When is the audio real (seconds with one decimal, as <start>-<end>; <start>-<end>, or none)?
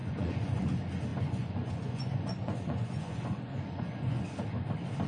0.6-1.1; 4.2-5.1